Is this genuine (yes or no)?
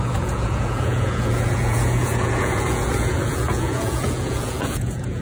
no